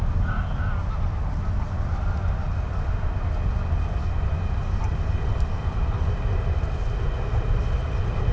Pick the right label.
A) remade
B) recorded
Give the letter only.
B